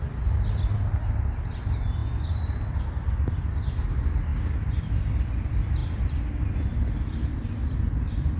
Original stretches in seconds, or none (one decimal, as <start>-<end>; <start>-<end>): 0.0-8.4